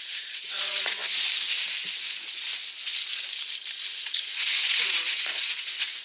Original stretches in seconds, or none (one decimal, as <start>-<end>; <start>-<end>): 1.0-2.0; 2.5-4.0

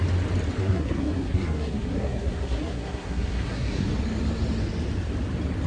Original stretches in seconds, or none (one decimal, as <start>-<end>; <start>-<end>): 0.0-0.6; 3.9-5.7

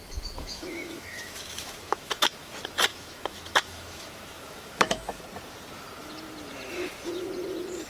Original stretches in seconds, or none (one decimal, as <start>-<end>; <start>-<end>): 2.5-2.9; 5.2-7.9

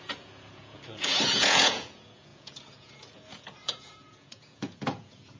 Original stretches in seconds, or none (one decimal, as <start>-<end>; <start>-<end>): none

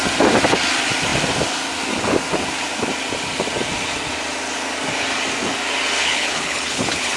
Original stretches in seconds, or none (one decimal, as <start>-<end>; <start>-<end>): 0.0-6.0

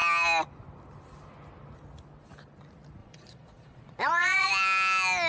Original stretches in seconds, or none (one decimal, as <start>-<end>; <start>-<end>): 0.0-3.0; 4.5-5.3